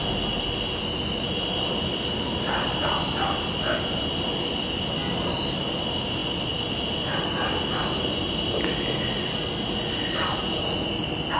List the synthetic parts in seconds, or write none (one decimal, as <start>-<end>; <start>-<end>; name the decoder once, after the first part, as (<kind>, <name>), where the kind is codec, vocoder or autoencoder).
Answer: none